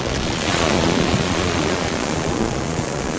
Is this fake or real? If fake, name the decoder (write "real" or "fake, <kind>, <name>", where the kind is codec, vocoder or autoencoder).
fake, vocoder, Vocos